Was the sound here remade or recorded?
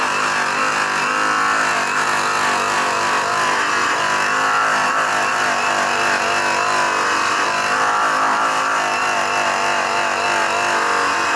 recorded